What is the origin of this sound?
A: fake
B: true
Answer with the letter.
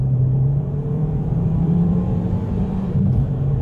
A